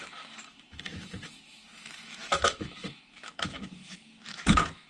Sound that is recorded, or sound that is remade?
remade